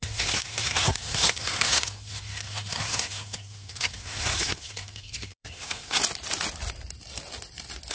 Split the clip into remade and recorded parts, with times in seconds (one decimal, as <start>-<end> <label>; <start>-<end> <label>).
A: 0.0-6.0 remade; 6.0-7.9 recorded